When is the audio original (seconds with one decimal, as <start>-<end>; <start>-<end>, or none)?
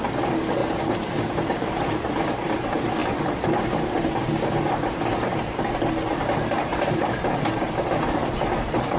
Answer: 0.0-0.6; 2.2-3.0; 5.0-6.7; 7.2-9.0